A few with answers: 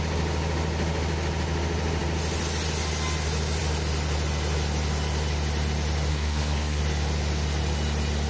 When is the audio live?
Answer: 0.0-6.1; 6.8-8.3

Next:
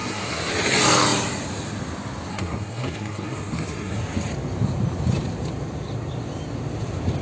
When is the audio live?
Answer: 0.5-2.3; 4.0-7.2

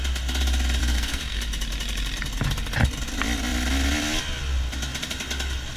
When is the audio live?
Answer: 0.0-0.8; 1.4-5.8

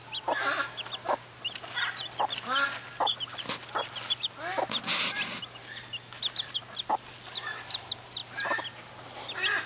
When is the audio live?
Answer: 0.0-9.7

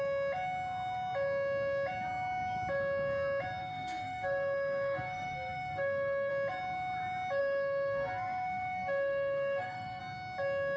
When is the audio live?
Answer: 0.0-3.6; 6.3-7.4; 10.0-10.8